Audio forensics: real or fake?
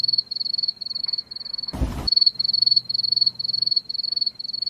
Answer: fake